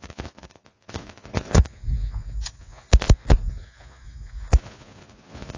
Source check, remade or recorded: remade